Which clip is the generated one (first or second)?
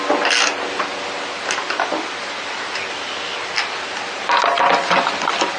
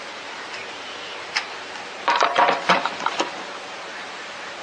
second